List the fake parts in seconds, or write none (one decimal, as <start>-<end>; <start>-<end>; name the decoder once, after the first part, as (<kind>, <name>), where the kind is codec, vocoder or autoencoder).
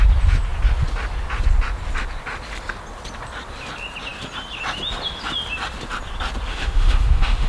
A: 6.5-7.5 (autoencoder, DAC-VAE)